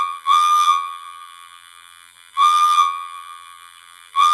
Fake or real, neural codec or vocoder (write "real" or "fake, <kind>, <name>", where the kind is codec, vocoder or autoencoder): fake, vocoder, BigVGAN v2